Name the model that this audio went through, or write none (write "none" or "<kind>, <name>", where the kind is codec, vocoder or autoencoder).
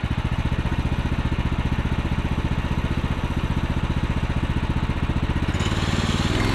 none